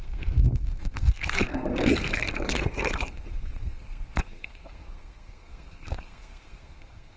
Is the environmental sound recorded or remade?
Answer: remade